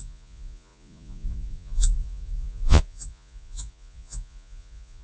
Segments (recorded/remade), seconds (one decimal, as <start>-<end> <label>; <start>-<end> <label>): 0.0-5.0 remade